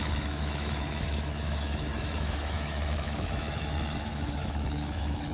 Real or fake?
fake